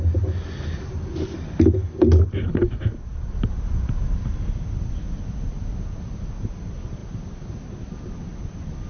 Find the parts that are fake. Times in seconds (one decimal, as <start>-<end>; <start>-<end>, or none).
none